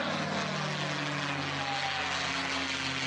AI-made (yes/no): no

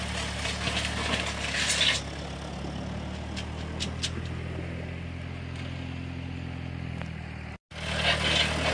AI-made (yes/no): no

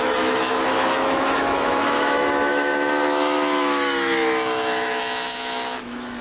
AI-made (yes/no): yes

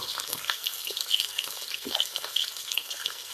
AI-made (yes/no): yes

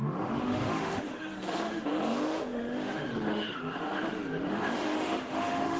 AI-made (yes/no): yes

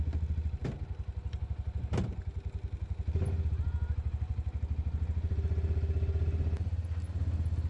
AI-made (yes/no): no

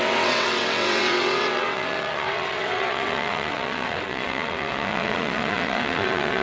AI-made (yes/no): yes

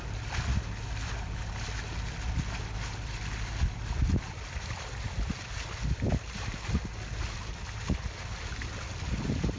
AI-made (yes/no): no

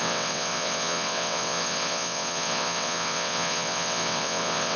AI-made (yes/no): yes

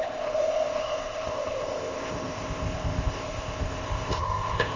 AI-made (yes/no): yes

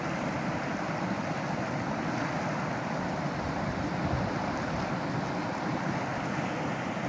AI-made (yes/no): no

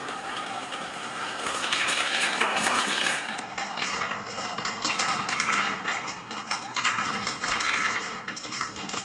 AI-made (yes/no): yes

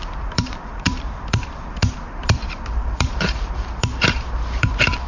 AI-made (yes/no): yes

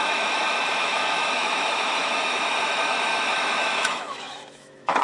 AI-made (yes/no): yes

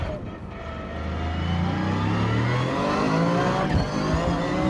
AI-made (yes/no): no